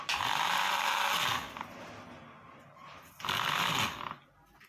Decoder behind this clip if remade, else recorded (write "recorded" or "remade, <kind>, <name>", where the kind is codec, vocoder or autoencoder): recorded